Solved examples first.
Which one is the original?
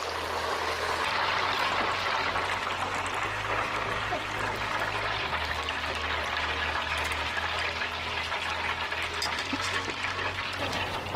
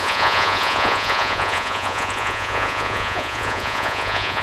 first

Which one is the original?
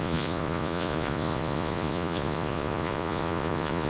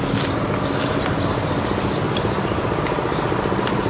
second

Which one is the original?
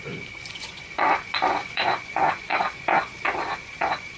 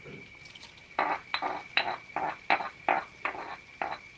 second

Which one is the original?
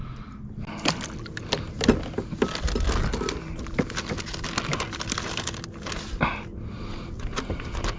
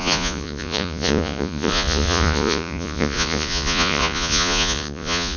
first